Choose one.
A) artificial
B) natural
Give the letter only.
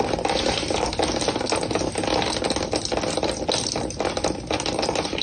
B